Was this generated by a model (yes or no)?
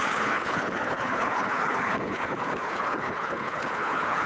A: yes